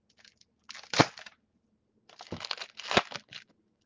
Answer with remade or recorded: recorded